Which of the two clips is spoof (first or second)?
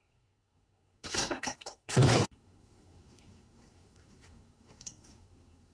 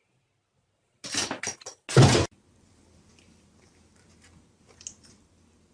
first